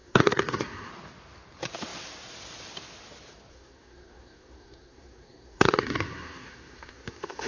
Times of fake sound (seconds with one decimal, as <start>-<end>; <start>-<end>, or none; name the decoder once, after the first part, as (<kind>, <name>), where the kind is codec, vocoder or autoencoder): 0.0-0.9 (codec, SNAC); 3.5-7.5